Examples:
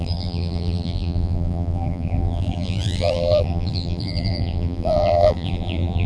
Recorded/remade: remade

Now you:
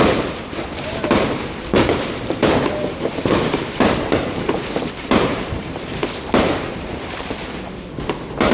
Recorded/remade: remade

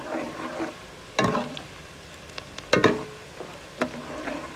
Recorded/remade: remade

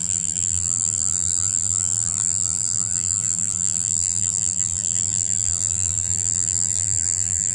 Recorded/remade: remade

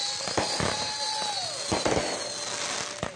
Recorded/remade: recorded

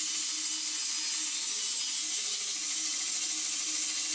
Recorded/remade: recorded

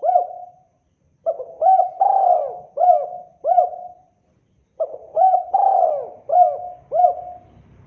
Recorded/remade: recorded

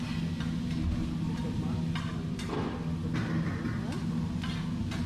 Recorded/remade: recorded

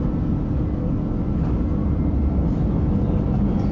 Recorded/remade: recorded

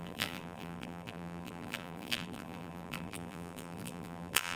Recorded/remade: remade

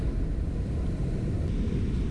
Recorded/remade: recorded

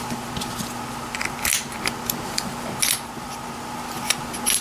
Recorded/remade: recorded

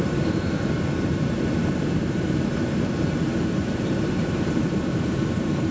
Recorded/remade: remade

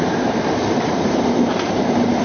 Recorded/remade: remade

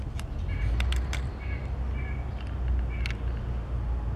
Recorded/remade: recorded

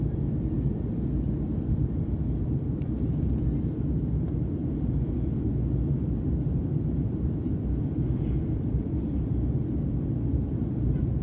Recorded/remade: remade